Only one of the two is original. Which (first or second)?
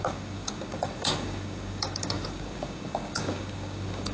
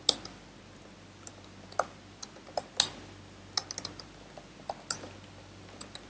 second